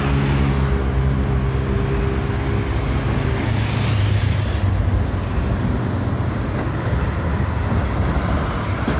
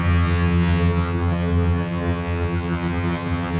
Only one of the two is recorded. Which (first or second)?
first